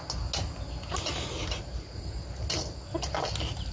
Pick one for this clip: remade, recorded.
recorded